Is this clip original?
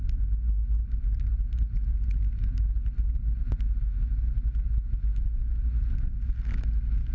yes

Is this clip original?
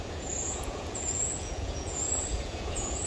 no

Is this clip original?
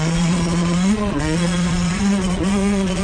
no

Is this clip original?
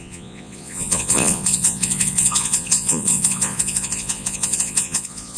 no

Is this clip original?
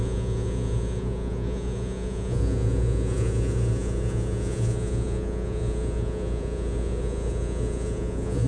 no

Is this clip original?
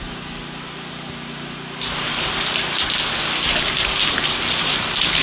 yes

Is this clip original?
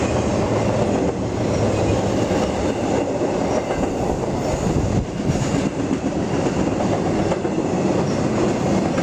yes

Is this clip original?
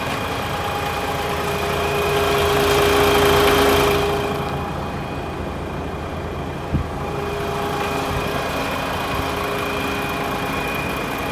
yes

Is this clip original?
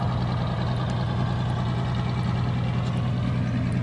yes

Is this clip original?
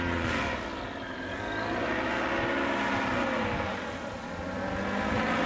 yes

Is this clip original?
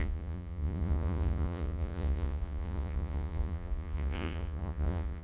no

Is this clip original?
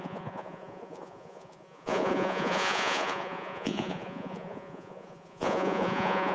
no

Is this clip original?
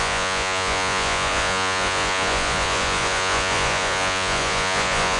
no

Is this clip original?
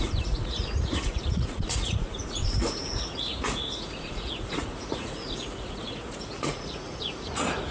no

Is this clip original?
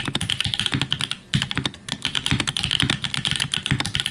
yes